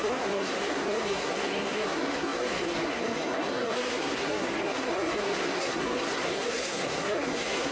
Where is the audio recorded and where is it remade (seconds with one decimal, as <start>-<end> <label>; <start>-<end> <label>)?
0.0-7.7 remade